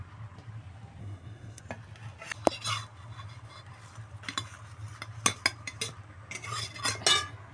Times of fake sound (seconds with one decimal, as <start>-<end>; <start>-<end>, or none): 1.0-1.6